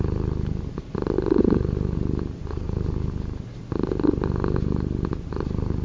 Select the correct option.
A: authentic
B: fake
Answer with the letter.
A